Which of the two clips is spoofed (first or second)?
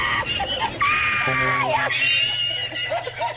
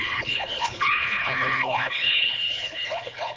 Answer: second